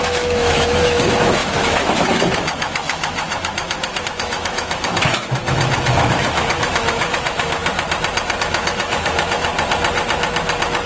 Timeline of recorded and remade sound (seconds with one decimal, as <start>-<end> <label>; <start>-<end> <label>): 0.0-7.6 remade; 7.6-8.4 recorded; 8.4-9.5 remade; 9.5-10.9 recorded